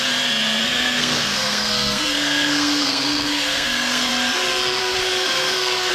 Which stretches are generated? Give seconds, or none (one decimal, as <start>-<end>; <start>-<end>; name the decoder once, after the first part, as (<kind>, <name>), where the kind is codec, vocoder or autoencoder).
0.6-4.1 (codec, SNAC); 4.8-5.9